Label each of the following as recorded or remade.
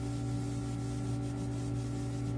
recorded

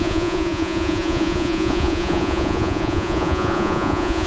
remade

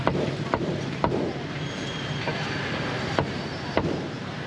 remade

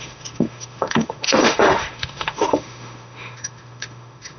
remade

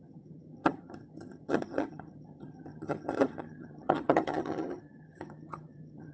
remade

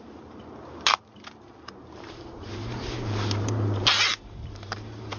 remade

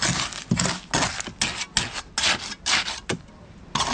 recorded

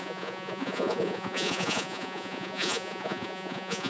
remade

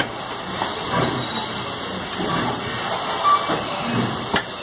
recorded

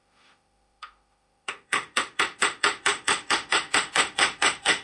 remade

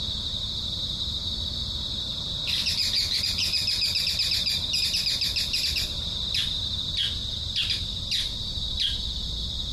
recorded